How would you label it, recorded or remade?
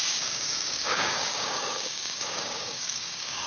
remade